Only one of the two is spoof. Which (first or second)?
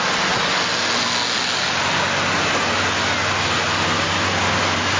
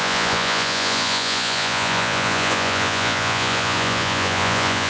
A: second